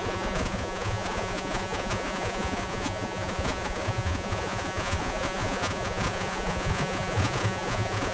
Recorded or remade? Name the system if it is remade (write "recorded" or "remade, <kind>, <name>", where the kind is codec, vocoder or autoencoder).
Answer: remade, vocoder, Vocos